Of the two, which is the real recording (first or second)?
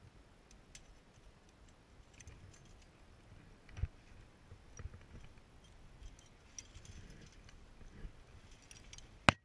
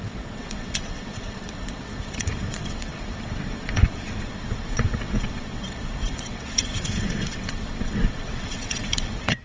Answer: first